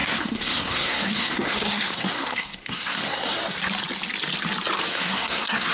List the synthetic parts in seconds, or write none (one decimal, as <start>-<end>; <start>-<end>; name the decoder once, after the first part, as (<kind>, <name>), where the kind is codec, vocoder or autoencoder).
0.0-3.4 (codec, SNAC); 4.9-5.7